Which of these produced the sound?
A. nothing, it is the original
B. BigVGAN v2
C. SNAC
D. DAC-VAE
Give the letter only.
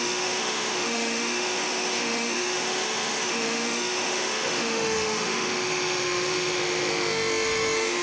D